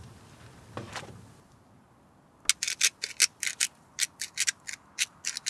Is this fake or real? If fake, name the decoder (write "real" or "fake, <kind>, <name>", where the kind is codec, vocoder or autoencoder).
real